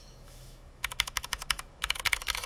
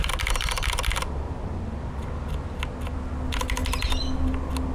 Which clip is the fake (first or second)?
first